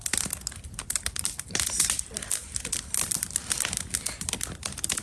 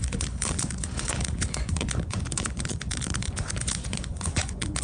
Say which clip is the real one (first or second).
first